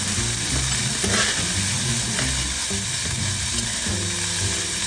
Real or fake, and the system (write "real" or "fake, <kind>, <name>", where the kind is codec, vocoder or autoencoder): real